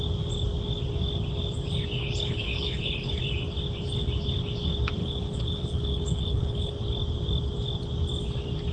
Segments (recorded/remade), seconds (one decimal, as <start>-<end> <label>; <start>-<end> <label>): 0.0-2.0 recorded; 2.0-3.2 remade; 3.2-5.0 recorded; 5.0-6.7 remade; 6.7-8.7 recorded